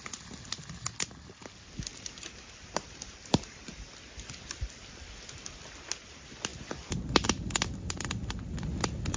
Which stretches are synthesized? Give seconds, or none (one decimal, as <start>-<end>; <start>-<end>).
1.9-3.7